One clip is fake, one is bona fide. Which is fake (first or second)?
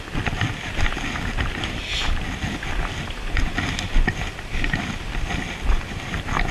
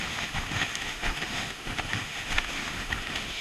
second